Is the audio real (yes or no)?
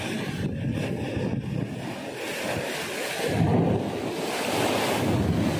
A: yes